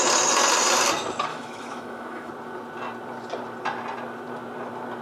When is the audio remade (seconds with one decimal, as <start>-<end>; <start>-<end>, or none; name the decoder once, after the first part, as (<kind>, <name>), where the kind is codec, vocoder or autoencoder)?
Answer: 1.3-2.3 (autoencoder, DAC-VAE)